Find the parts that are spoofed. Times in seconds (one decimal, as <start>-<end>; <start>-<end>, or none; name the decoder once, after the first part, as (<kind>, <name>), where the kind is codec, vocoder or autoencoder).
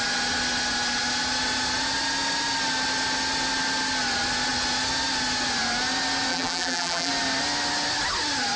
6.3-7.1 (vocoder, BigVGAN v2)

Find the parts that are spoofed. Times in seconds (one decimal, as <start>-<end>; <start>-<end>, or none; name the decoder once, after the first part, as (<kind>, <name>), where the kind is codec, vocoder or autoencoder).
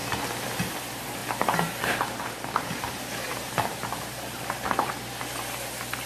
1.2-4.9 (vocoder, BigVGAN v2)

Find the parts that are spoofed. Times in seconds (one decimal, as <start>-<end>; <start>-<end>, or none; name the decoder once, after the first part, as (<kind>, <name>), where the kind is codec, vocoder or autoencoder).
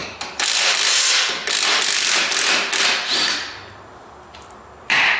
3.1-5.2 (vocoder, BigVGAN v2)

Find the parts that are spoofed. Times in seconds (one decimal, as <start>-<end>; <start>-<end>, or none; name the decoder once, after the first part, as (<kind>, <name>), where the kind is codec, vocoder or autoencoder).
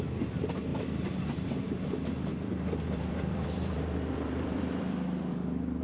2.3-5.8 (vocoder, BigVGAN v2)